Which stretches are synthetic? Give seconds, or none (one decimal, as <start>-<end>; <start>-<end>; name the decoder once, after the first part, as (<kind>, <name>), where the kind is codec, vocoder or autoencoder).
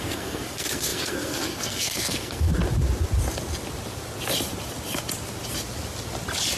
0.0-2.5 (codec, SNAC)